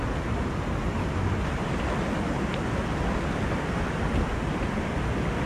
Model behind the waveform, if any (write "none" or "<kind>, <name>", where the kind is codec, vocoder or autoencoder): none